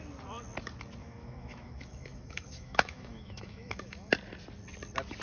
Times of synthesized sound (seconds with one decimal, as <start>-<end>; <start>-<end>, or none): 1.0-4.1